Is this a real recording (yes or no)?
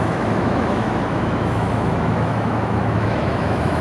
no